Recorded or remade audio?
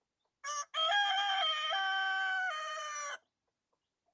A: recorded